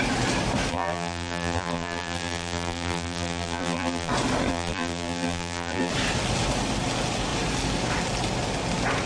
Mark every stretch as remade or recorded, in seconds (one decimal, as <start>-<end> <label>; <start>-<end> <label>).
0.0-0.7 recorded; 0.7-4.1 remade; 4.1-4.5 recorded; 4.5-5.9 remade; 5.9-9.1 recorded